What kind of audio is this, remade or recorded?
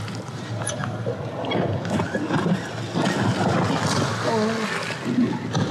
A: recorded